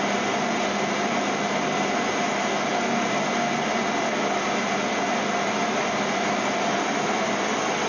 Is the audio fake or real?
real